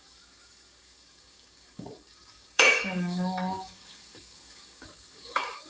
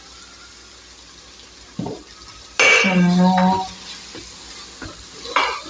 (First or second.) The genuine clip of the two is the second